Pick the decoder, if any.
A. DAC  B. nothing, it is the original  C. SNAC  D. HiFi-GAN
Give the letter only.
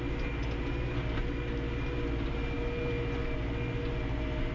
B